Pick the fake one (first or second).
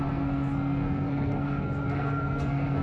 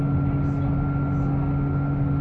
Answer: first